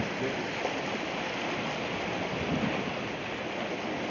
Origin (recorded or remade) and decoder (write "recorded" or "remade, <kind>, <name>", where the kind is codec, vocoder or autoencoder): recorded